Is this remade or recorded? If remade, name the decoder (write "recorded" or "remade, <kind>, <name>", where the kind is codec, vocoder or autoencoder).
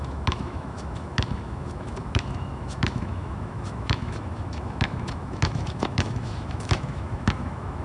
remade, autoencoder, DAC-VAE